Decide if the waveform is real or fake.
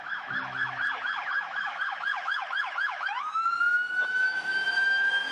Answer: fake